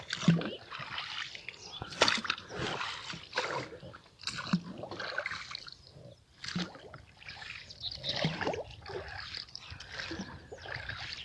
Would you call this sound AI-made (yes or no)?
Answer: no